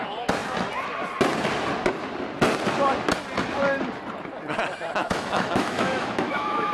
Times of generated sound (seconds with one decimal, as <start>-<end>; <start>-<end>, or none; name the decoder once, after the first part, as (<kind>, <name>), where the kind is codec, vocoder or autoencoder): 5.0-6.7 (autoencoder, DAC-VAE)